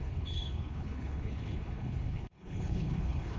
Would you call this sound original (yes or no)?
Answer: no